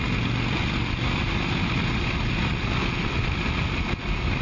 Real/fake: real